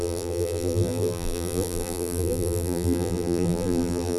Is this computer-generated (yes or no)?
yes